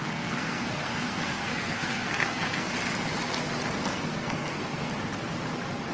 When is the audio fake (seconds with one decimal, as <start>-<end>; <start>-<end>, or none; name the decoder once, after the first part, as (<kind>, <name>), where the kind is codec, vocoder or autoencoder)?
0.0-2.7 (codec, SNAC); 3.8-4.9